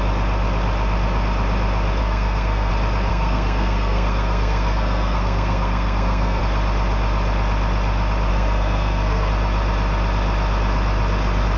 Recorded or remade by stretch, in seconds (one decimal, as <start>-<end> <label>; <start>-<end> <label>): 0.0-2.0 recorded; 2.0-2.7 remade; 2.7-3.1 recorded; 3.1-6.4 remade; 6.4-8.3 recorded; 8.3-9.3 remade; 9.3-11.6 recorded